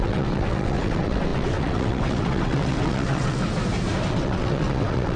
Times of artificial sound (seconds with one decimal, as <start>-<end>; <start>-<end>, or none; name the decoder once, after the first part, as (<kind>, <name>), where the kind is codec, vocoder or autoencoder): 0.0-3.4 (vocoder, WaveNeXt); 4.1-5.2